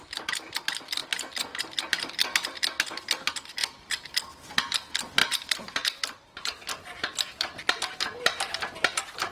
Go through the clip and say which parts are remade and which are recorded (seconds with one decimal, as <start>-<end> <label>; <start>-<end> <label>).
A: 0.0-1.0 recorded; 1.0-1.6 remade; 1.6-3.6 recorded; 3.6-4.5 remade; 4.5-5.2 recorded; 5.2-7.8 remade; 7.8-9.3 recorded